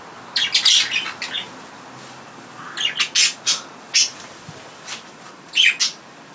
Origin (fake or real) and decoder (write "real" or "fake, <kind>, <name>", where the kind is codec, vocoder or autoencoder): real